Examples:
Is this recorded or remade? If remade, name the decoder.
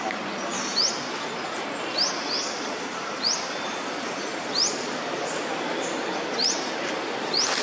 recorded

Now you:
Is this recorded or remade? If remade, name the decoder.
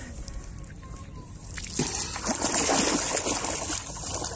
recorded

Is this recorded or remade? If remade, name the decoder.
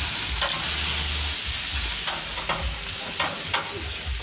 recorded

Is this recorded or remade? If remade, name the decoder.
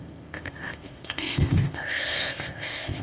remade, codec, ZipCodec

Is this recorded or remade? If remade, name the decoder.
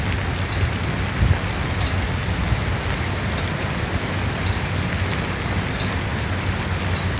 recorded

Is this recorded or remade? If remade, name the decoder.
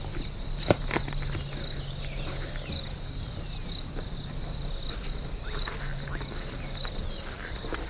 recorded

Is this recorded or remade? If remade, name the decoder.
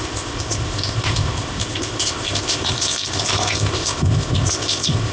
remade, codec, ZipCodec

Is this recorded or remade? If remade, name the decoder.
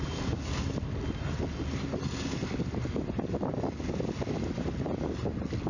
recorded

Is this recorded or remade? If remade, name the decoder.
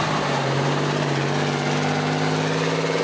recorded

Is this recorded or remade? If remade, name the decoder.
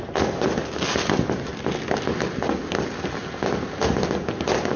recorded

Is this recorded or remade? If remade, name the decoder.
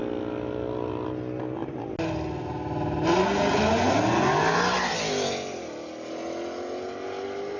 recorded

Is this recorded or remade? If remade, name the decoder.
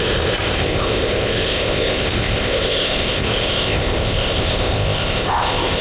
remade, codec, ZipCodec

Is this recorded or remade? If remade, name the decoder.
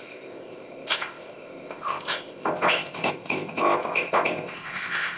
remade, codec, ZipCodec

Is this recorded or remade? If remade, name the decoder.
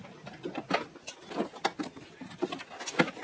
recorded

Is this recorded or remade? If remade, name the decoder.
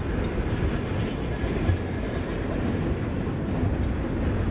recorded